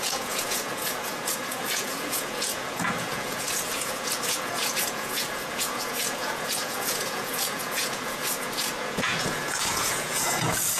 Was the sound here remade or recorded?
remade